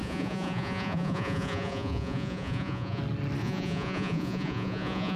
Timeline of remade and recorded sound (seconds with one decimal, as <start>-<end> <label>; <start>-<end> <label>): 0.0-3.0 remade; 3.0-3.4 recorded; 3.4-5.2 remade

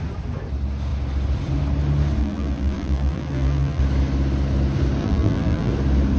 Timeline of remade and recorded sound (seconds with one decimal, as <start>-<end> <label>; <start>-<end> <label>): 0.0-2.2 recorded; 2.2-3.8 remade; 3.8-5.0 recorded; 5.0-5.7 remade; 5.7-6.2 recorded

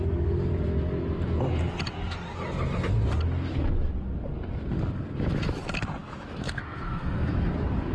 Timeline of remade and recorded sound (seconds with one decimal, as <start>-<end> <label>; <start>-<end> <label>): 0.0-6.0 recorded; 6.0-7.5 remade; 7.5-7.9 recorded

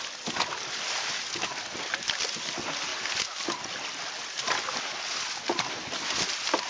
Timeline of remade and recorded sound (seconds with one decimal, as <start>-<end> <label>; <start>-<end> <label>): 0.0-6.7 recorded

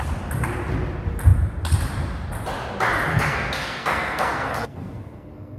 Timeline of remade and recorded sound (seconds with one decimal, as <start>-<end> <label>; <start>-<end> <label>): 0.0-3.1 recorded; 3.1-5.6 remade